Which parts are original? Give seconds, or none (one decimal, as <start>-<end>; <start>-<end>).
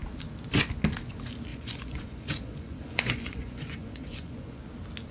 0.0-1.5; 4.6-5.1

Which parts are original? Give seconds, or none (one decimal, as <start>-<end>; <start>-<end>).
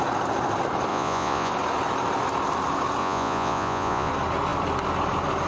0.0-0.9; 1.5-3.0; 4.1-5.5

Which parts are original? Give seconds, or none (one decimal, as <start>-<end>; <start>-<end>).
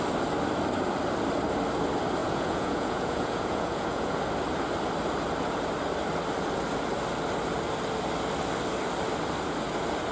0.0-2.2; 4.2-10.1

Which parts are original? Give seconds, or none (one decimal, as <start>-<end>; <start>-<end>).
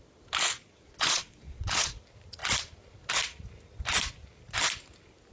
0.0-0.6; 2.0-5.3